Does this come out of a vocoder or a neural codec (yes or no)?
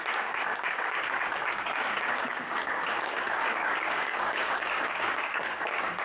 yes